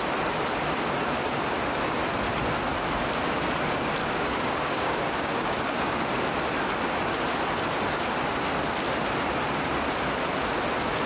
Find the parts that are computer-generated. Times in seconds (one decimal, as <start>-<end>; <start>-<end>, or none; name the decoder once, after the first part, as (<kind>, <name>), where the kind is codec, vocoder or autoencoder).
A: 4.0-6.0 (codec, DAC)